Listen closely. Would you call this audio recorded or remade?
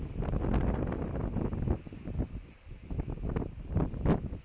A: recorded